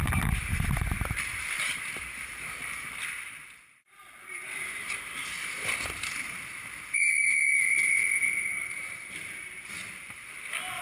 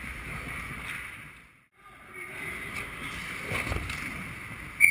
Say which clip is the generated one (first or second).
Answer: first